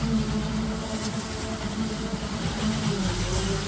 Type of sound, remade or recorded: recorded